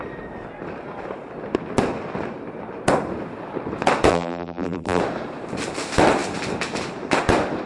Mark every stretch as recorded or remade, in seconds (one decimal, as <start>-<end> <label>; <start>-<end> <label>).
0.0-4.1 recorded; 4.1-5.0 remade; 5.0-7.7 recorded